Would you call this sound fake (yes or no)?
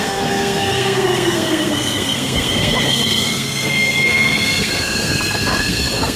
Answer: yes